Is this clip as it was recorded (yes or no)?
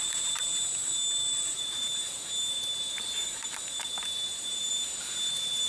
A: no